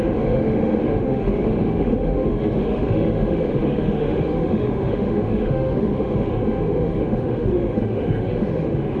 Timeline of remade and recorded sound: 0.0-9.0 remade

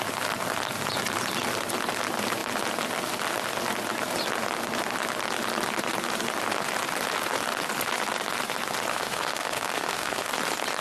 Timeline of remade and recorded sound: 0.0-8.9 recorded; 8.9-10.3 remade; 10.3-10.8 recorded

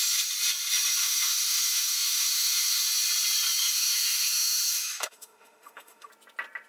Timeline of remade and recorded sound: 0.0-1.0 recorded; 1.0-2.8 remade; 2.8-3.6 recorded; 3.6-6.1 remade; 6.1-6.7 recorded

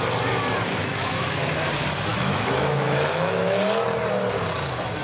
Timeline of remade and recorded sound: 0.0-0.8 recorded; 0.8-1.7 remade; 1.7-2.1 recorded; 2.1-3.6 remade; 3.6-5.0 recorded